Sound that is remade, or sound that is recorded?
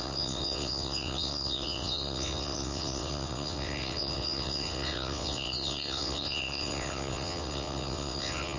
remade